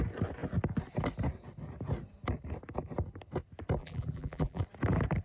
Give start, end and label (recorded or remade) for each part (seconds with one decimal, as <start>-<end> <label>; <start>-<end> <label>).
0.0-3.8 recorded; 3.8-4.6 remade; 4.6-5.2 recorded